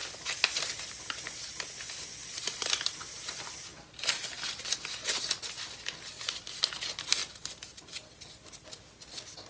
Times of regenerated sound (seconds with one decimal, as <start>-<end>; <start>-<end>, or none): 2.2-2.7; 7.2-8.7